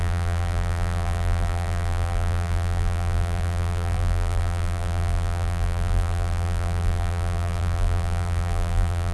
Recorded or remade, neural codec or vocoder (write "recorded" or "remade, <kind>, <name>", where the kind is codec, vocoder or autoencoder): remade, vocoder, BigVGAN v2